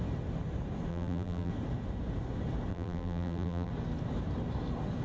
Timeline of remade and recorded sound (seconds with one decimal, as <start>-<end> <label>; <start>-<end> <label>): 0.0-0.9 recorded; 0.9-1.5 remade; 1.5-2.7 recorded; 2.7-3.7 remade; 3.7-5.0 recorded